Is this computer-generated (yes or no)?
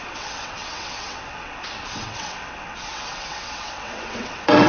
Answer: yes